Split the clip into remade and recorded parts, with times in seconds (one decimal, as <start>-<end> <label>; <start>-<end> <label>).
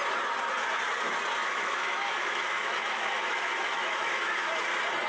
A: 0.0-1.4 recorded; 1.4-4.5 remade; 4.5-5.1 recorded